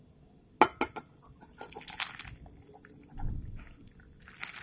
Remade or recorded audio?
recorded